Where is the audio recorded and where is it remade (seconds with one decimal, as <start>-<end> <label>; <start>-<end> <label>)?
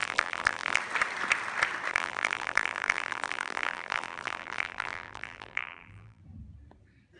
0.0-0.8 remade; 0.8-1.9 recorded; 1.9-6.2 remade; 6.2-7.2 recorded